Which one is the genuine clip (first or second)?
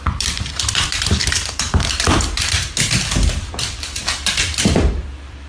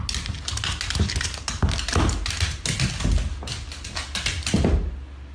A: second